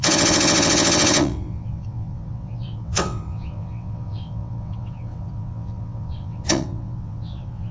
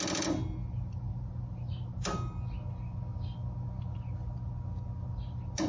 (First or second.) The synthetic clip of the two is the first